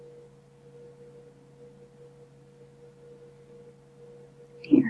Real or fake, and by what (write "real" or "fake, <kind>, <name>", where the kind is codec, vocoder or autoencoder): real